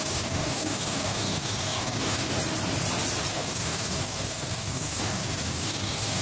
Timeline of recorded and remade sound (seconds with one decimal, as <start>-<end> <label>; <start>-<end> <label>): 0.0-2.3 remade; 2.3-3.3 recorded; 3.3-6.2 remade